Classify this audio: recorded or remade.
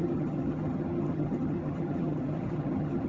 remade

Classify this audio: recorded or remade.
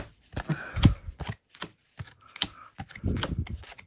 recorded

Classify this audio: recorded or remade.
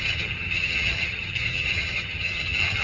remade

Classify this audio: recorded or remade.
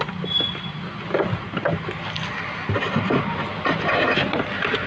recorded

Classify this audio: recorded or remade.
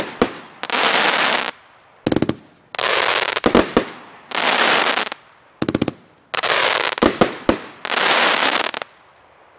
recorded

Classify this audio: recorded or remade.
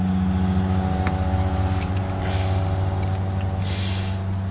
recorded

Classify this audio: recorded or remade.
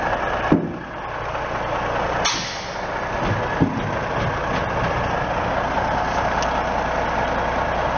recorded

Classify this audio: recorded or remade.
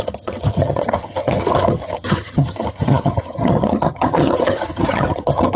remade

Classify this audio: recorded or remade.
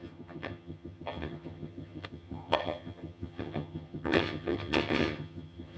remade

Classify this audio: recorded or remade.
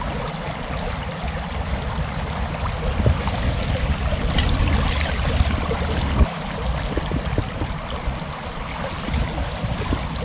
recorded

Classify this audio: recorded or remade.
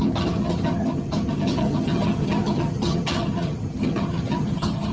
remade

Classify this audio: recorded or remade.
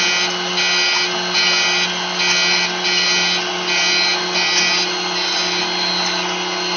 recorded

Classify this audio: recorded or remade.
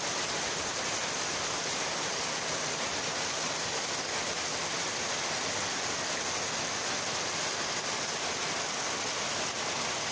recorded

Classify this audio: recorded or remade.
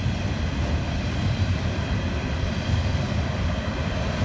recorded